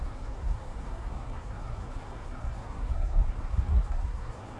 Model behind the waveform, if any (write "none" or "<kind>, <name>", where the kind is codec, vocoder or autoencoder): codec, SNAC